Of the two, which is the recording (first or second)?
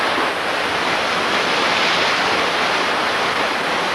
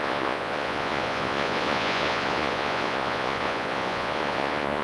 first